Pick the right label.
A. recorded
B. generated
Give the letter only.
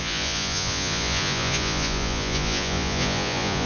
B